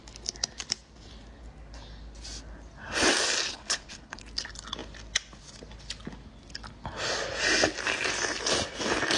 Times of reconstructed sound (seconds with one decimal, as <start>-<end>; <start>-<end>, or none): 3.5-4.2